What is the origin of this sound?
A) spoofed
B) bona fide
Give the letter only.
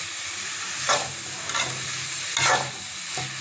B